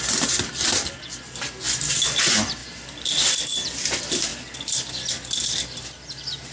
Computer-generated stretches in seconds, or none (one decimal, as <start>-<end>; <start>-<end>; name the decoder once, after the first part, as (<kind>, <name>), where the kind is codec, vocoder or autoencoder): 0.0-6.5 (vocoder, BigVGAN v2)